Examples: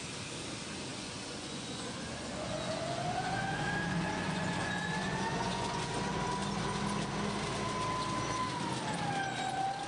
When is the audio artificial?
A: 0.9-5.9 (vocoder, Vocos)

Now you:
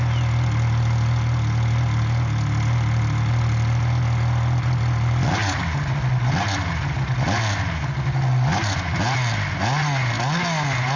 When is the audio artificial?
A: 5.4-6.0 (vocoder, BigVGAN v2)

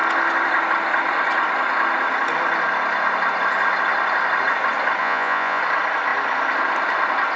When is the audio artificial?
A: 5.0-5.6 (vocoder, Vocos)

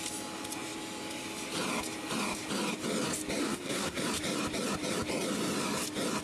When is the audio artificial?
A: 3.4-4.0 (codec, SNAC)

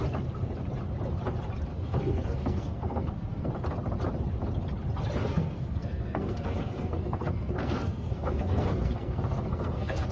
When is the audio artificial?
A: 1.7-3.5 (codec, SNAC); 5.2-10.1

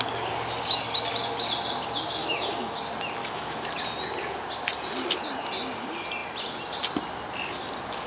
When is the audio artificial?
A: 2.2-2.8 (autoencoder, DAC-VAE); 3.2-3.7